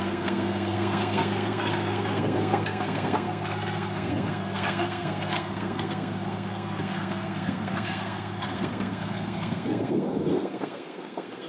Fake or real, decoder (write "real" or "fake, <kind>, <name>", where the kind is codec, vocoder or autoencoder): fake, codec, SNAC